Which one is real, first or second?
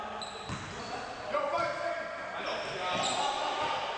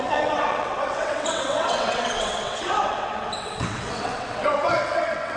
first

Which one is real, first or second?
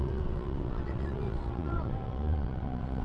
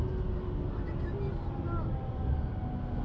second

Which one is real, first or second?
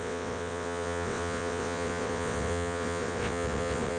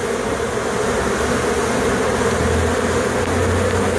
second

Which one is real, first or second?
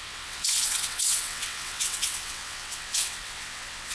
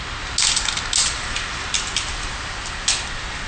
second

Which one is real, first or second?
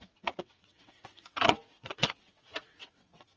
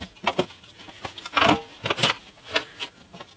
second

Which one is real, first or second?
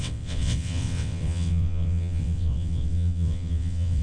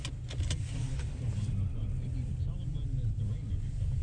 second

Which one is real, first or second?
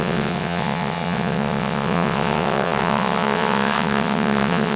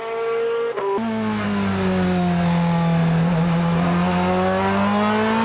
second